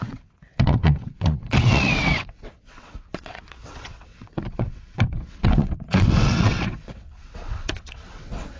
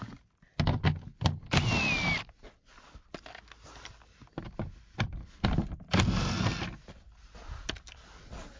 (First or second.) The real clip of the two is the second